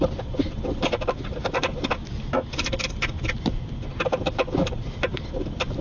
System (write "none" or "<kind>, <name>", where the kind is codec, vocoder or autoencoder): none